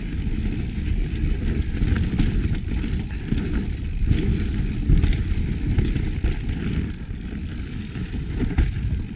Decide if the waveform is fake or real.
real